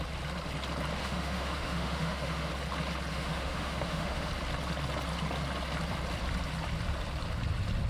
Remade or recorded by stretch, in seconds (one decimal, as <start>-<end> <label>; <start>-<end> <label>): 0.0-1.0 recorded; 1.0-2.5 remade; 2.5-3.1 recorded; 3.1-4.3 remade; 4.3-7.9 recorded